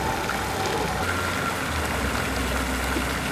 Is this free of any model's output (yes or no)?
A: yes